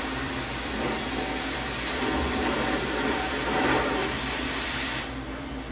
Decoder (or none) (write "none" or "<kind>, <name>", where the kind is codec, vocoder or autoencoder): vocoder, BigVGAN v2